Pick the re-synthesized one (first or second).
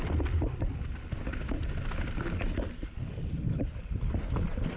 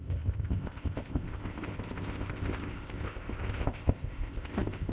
second